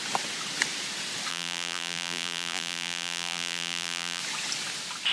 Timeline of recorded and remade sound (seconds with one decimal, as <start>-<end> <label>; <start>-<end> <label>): 0.0-1.3 recorded; 1.3-4.2 remade; 4.2-5.1 recorded